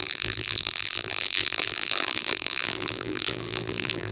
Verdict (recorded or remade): remade